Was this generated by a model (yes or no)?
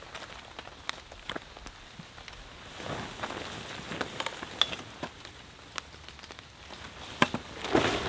no